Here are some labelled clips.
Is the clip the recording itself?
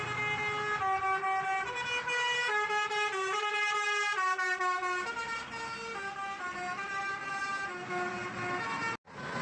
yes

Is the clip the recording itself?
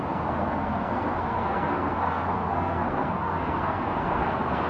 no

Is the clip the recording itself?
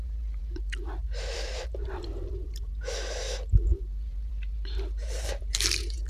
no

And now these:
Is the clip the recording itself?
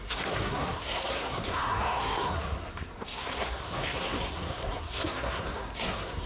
no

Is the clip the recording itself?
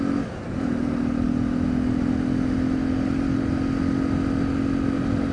yes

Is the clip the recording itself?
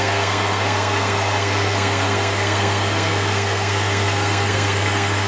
no